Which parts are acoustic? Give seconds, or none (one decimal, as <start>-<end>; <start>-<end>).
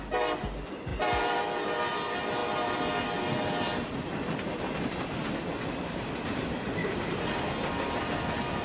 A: 0.0-0.9; 1.4-6.8; 7.4-8.6